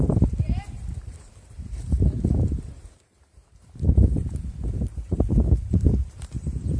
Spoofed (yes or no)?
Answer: yes